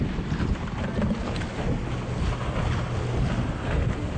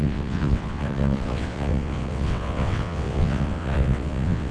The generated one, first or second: second